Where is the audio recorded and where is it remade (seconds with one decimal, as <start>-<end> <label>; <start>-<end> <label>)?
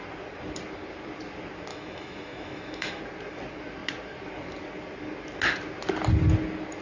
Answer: 0.0-1.7 recorded; 1.7-3.0 remade; 3.0-6.8 recorded